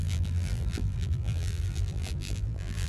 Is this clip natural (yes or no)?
no